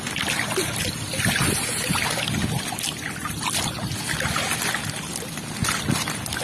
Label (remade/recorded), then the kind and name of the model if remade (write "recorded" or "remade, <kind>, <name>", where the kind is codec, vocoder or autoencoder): recorded